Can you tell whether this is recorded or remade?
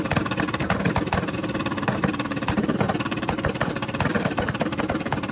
remade